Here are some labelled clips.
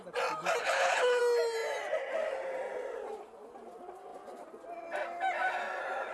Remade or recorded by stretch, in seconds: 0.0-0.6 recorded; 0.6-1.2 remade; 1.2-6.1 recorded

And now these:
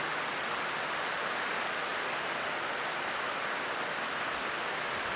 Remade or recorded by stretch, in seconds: 0.0-5.2 recorded